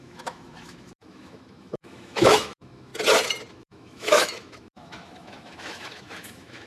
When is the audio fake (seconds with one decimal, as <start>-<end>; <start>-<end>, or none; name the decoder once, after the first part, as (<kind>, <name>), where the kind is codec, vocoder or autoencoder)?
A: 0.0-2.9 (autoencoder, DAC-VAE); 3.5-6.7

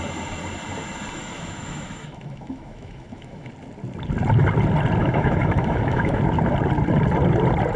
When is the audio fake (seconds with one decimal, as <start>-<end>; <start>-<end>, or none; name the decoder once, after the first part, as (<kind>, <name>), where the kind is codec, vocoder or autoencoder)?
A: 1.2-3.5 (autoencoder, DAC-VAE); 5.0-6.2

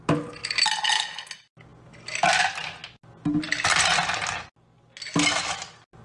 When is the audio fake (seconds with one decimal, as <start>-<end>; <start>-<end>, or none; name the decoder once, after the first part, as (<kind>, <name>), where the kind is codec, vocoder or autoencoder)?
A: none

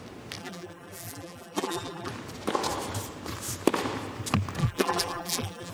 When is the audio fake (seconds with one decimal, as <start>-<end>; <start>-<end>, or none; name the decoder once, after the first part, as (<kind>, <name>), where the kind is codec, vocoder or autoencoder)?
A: 0.4-2.1 (vocoder, BigVGAN v2); 4.6-5.7